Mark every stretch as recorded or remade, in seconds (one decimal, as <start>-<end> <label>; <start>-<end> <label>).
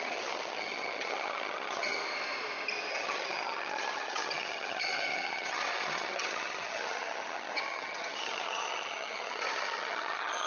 0.0-2.0 remade; 2.0-2.9 recorded; 2.9-10.5 remade